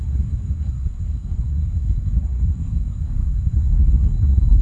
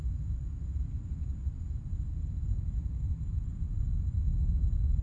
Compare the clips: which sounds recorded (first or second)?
second